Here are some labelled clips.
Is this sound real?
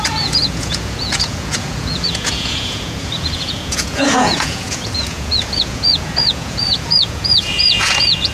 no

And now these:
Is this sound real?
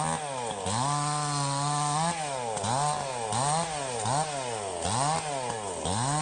yes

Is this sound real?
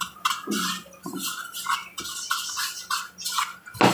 yes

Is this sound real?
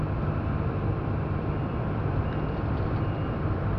no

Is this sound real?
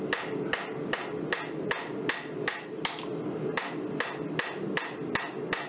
yes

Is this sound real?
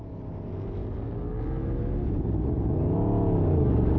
yes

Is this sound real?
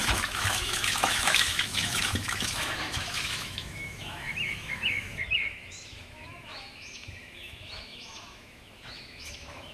no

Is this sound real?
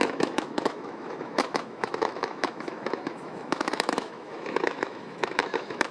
no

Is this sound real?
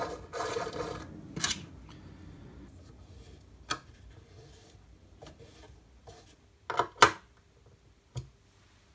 yes